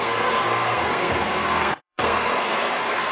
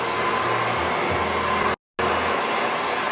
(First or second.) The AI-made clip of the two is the first